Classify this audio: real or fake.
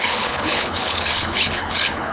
fake